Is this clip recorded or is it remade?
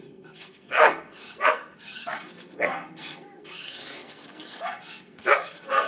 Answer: remade